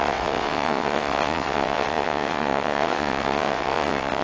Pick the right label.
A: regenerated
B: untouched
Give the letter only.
A